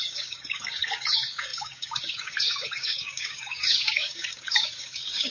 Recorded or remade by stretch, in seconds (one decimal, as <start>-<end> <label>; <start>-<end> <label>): 0.0-5.3 remade